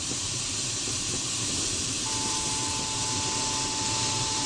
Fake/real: fake